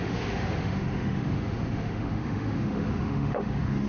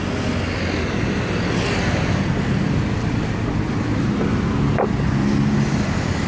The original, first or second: second